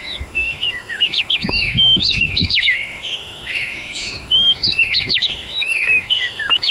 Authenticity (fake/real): fake